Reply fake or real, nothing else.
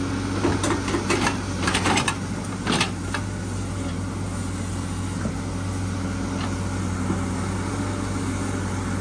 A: real